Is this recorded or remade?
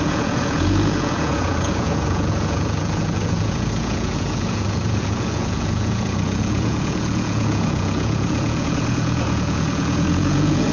remade